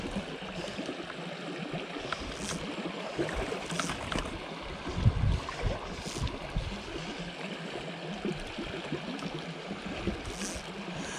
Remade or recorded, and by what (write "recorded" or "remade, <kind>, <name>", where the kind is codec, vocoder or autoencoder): recorded